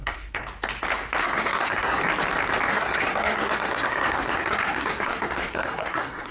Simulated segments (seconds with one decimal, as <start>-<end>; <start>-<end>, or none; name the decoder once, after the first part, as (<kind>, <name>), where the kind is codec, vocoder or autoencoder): 0.0-0.4 (codec, SNAC); 1.2-2.0; 2.7-6.3